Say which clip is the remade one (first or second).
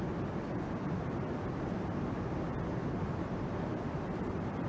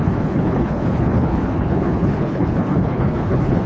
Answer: second